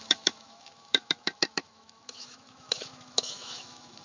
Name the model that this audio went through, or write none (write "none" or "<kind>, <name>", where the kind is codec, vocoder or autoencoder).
autoencoder, DAC-VAE